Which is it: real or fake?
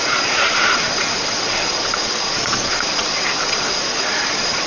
fake